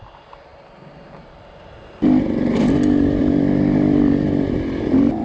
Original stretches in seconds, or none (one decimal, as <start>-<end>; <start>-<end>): 0.0-5.2